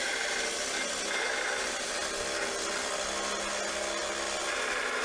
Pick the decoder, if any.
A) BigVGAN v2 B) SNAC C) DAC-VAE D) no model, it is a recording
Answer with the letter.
D